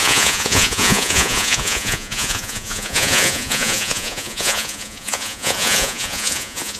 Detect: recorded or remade remade